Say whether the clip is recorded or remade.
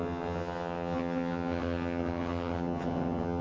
remade